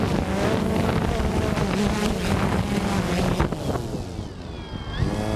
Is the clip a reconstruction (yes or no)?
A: no